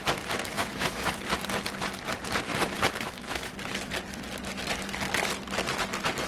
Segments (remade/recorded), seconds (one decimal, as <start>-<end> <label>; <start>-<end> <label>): 0.0-0.6 recorded; 0.6-1.1 remade; 1.1-2.5 recorded; 2.5-3.5 remade; 3.5-6.3 recorded